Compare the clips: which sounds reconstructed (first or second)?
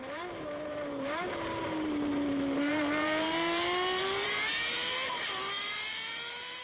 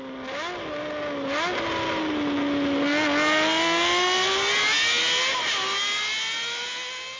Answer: first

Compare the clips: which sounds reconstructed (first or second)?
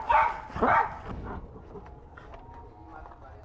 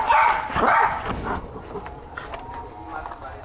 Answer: second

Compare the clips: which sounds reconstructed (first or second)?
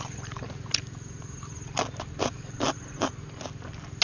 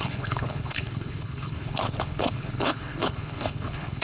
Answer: second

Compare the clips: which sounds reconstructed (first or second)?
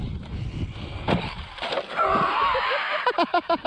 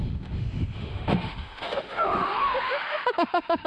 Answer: second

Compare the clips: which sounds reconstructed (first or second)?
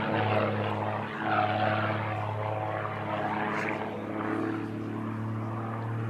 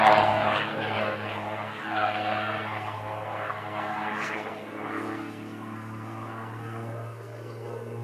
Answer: second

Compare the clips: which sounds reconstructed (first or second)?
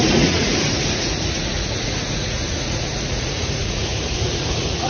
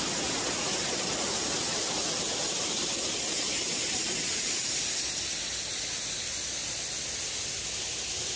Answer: first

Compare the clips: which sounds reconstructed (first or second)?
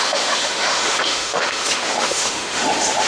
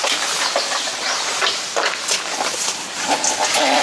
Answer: first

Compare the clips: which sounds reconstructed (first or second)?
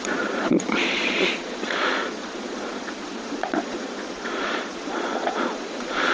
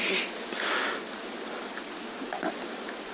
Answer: first